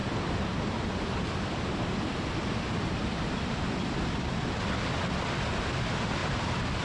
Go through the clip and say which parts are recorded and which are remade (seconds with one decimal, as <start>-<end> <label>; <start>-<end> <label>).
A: 0.0-6.8 recorded